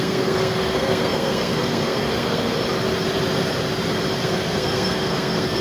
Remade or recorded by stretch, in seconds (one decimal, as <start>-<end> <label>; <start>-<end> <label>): 0.0-2.5 remade; 2.5-4.2 recorded; 4.2-5.6 remade